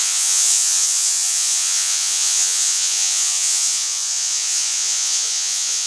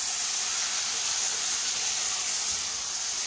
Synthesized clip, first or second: first